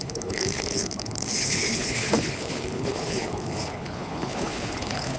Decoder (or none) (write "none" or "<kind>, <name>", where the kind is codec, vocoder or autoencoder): codec, HILCodec